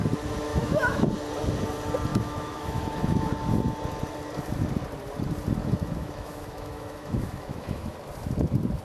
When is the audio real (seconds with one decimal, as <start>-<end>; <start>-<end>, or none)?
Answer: 0.0-0.5; 1.1-2.1; 3.3-5.6; 8.0-8.8